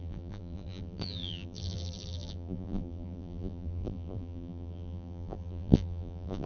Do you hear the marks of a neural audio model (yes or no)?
yes